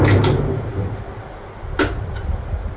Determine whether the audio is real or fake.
real